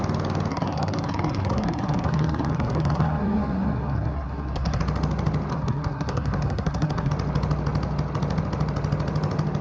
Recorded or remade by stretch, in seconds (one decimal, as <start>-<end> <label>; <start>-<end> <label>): 0.0-0.5 recorded; 0.5-4.8 remade; 4.8-5.5 recorded; 5.5-7.1 remade; 7.1-9.6 recorded